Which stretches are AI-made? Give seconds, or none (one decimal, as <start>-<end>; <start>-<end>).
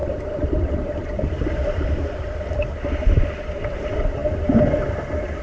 0.0-4.2; 4.8-5.4